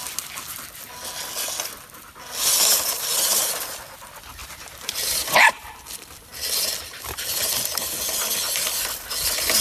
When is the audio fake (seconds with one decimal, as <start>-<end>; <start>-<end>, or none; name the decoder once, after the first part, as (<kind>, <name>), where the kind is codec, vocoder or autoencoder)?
4.4-5.8 (vocoder, BigVGAN v2)